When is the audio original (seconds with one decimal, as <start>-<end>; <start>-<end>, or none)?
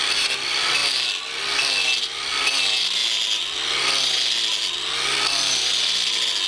0.0-6.5